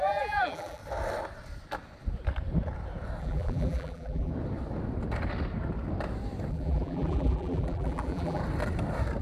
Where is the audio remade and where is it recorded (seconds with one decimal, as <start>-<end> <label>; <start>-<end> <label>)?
0.0-0.8 remade; 0.8-3.2 recorded; 3.2-4.3 remade; 4.3-6.5 recorded; 6.5-8.4 remade; 8.4-9.2 recorded